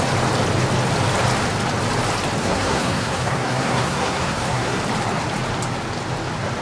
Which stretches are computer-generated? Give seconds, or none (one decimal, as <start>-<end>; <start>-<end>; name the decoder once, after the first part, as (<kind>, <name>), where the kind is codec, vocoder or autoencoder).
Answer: 2.4-4.8 (codec, SNAC)